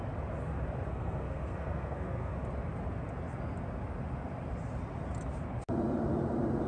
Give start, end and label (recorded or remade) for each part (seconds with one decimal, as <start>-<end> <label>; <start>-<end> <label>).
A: 0.0-0.9 recorded; 0.9-2.3 remade; 2.3-6.7 recorded